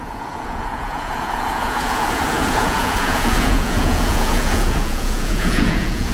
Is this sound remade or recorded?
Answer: remade